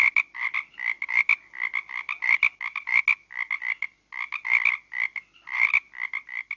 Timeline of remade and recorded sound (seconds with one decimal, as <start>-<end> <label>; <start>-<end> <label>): 0.0-6.6 recorded